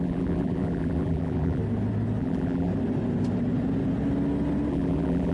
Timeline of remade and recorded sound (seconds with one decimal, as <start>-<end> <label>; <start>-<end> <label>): 0.0-1.6 remade; 1.6-2.2 recorded; 2.2-2.7 remade; 2.7-4.7 recorded; 4.7-5.3 remade